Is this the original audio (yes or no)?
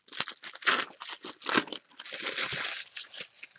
yes